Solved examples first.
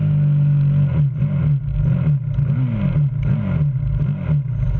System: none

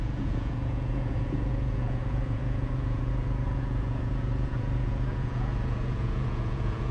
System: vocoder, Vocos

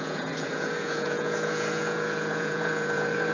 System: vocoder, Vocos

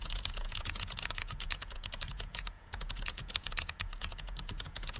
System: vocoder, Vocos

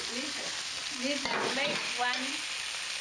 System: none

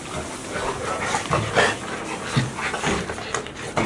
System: none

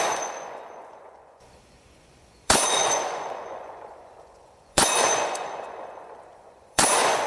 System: vocoder, Vocos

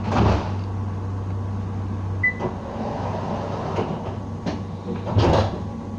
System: none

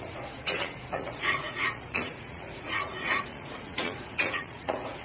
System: vocoder, Vocos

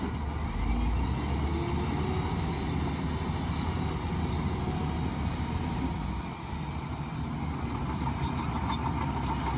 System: none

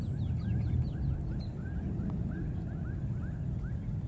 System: none